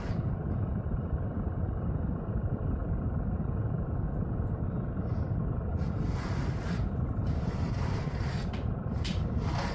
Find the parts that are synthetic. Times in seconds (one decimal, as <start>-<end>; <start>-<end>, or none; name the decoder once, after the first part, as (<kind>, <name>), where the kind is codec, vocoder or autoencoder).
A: 0.0-2.8 (vocoder, BigVGAN v2); 5.7-9.7

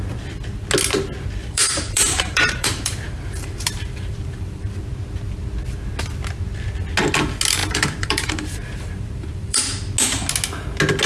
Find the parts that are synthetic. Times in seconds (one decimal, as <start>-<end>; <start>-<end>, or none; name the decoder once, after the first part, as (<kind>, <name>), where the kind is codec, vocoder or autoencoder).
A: 1.4-4.8 (vocoder, BigVGAN v2); 7.6-9.6

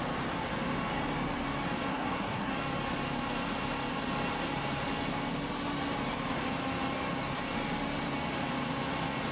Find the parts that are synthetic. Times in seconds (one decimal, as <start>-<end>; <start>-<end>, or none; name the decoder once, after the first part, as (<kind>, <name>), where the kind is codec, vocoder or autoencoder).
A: 1.9-2.5 (codec, SNAC)

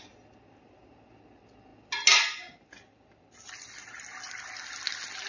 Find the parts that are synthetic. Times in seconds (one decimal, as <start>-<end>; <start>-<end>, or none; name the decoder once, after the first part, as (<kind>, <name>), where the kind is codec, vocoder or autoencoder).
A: none